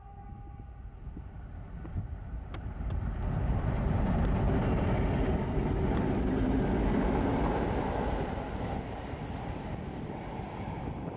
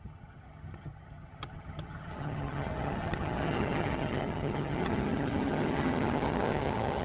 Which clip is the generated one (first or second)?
second